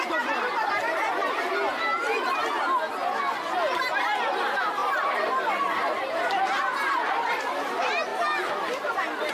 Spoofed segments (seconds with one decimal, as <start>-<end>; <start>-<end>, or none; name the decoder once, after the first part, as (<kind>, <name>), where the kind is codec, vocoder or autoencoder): 0.0-1.2 (vocoder, BigVGAN v2); 4.3-4.8; 7.5-8.1